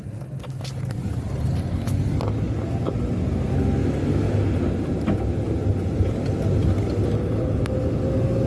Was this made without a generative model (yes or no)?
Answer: yes